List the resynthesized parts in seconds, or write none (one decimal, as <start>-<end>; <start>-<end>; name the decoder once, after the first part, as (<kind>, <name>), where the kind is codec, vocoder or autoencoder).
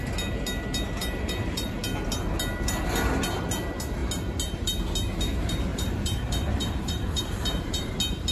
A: 1.0-1.8 (vocoder, BigVGAN v2); 5.7-7.9